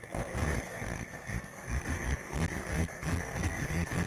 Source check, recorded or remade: remade